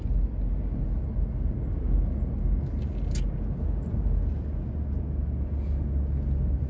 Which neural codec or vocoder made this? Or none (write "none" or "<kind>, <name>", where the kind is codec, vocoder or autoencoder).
none